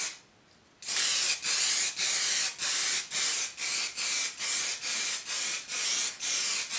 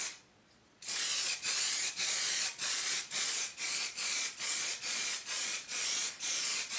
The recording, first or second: first